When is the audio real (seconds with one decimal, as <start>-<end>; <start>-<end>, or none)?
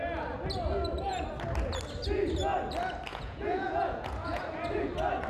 0.0-3.1; 4.4-5.3